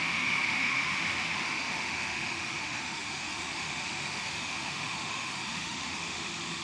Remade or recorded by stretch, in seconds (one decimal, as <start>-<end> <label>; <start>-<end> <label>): 0.0-6.6 remade